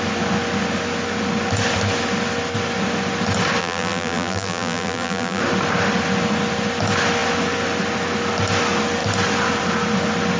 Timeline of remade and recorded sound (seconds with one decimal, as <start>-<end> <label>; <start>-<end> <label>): 0.0-3.6 recorded; 3.6-5.4 remade; 5.4-10.4 recorded